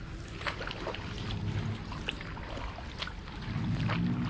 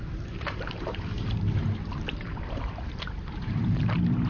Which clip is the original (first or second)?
first